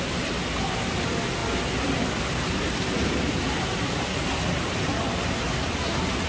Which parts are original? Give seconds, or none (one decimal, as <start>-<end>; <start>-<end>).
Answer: 0.0-1.4; 3.6-6.3

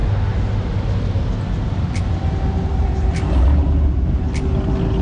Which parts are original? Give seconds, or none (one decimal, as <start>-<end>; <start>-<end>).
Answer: 0.0-2.7; 4.2-5.0

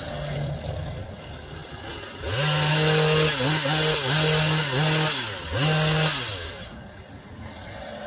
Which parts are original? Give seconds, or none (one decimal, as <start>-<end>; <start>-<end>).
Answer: 0.0-8.1

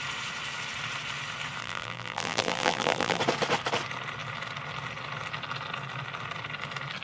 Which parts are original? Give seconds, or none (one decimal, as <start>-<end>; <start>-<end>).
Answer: 0.0-1.6; 3.2-7.0

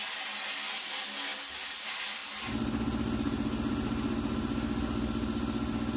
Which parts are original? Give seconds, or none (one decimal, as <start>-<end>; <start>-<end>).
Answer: 0.0-6.0

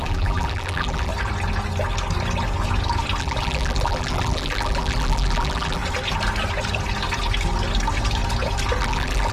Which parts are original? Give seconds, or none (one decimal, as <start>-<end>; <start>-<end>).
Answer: 1.1-3.2; 5.8-8.8

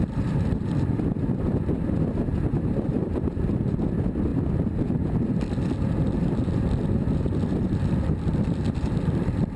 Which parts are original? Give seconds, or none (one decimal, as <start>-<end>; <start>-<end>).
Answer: 4.3-6.3